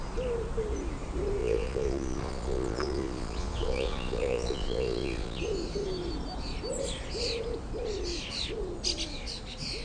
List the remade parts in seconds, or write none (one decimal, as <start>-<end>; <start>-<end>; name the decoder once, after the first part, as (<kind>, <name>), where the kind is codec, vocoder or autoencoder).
1.4-5.4 (vocoder, Vocos)